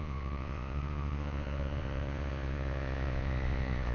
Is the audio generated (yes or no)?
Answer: yes